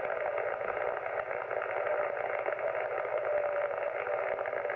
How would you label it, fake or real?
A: real